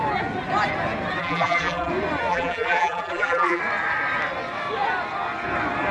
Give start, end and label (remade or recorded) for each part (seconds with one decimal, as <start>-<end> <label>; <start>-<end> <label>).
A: 0.0-1.2 recorded; 1.2-1.9 remade; 1.9-2.3 recorded; 2.3-3.6 remade; 3.6-5.9 recorded